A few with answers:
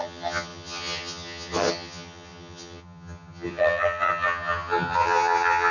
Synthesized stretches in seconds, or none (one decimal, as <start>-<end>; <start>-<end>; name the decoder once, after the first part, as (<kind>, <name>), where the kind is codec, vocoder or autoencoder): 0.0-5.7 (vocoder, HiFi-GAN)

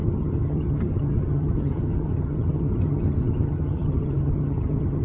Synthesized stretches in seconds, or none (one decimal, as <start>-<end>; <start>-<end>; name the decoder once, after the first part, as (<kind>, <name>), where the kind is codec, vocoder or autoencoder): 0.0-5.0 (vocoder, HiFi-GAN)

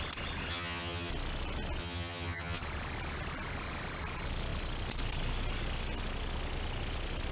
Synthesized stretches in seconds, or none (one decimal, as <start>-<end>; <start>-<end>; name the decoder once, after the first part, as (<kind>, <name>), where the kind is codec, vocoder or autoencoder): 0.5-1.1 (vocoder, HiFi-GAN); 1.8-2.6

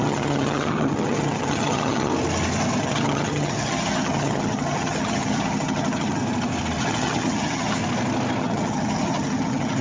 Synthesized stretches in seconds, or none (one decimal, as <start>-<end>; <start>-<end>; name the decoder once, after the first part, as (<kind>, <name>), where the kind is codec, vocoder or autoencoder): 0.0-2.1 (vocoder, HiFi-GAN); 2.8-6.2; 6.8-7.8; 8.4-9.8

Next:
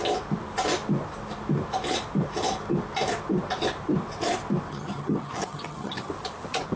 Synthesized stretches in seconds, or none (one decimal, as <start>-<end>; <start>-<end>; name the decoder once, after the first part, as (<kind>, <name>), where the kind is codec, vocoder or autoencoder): 4.7-6.1 (vocoder, HiFi-GAN)

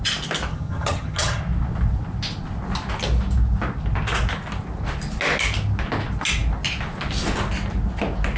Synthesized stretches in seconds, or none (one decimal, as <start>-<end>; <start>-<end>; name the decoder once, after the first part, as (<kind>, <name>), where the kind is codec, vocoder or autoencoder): 0.5-1.4 (vocoder, HiFi-GAN)